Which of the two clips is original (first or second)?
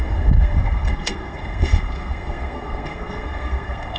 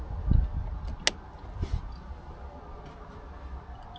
second